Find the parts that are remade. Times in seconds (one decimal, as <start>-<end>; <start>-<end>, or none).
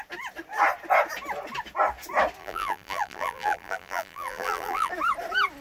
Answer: 2.4-4.9